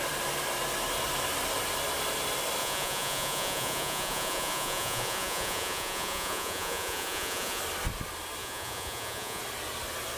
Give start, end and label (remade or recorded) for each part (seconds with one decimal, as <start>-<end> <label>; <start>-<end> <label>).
0.0-2.6 recorded; 2.6-7.6 remade; 7.6-8.4 recorded; 8.4-9.4 remade; 9.4-10.2 recorded